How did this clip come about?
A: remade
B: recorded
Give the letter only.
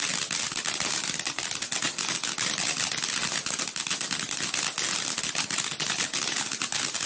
B